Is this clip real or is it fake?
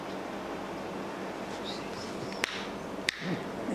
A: real